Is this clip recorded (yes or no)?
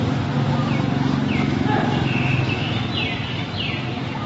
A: yes